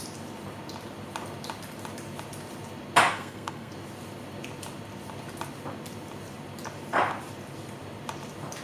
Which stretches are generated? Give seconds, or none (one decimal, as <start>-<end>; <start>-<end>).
3.1-3.7